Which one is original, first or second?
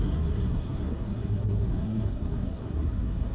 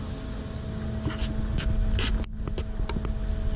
second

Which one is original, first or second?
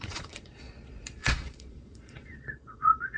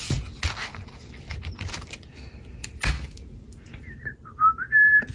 second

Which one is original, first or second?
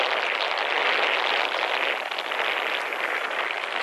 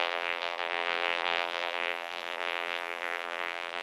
first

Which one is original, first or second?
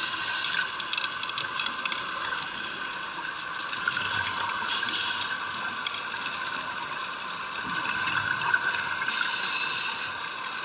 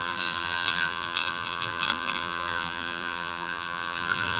first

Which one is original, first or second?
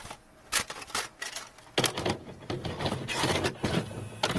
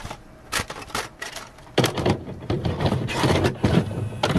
first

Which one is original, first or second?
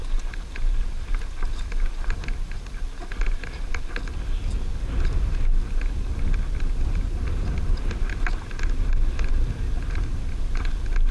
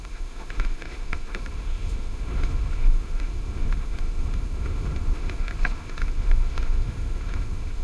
first